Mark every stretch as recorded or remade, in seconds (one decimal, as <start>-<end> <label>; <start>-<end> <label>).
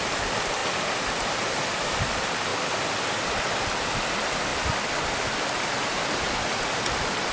0.0-7.3 recorded